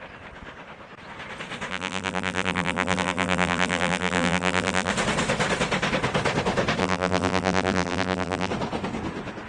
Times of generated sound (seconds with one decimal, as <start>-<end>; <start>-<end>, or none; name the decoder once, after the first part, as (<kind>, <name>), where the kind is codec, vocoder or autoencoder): 1.7-4.9 (vocoder, BigVGAN v2); 6.8-8.5